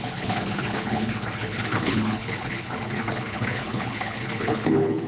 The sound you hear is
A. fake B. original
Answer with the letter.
A